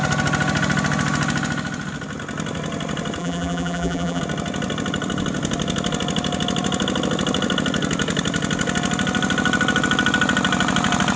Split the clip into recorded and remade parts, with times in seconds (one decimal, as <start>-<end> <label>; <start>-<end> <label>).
0.0-3.2 recorded; 3.2-4.2 remade; 4.2-11.2 recorded